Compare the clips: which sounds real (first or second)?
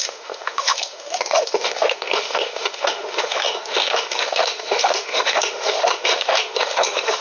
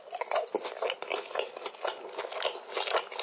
second